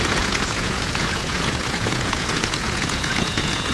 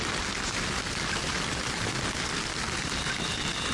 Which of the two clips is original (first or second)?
second